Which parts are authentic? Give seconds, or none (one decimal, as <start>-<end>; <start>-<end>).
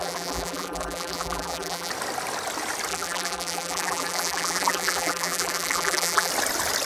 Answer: 1.9-2.9; 6.3-6.8